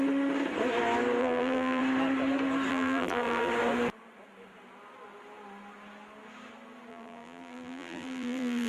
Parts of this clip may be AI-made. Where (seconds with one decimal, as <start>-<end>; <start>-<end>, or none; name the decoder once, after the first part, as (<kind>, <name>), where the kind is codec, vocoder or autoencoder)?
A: 1.2-1.8 (vocoder, BigVGAN v2); 2.7-3.5; 6.9-8.7